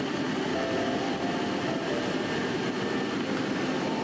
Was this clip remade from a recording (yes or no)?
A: no